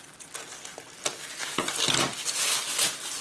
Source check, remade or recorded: recorded